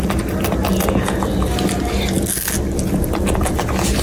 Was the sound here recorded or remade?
recorded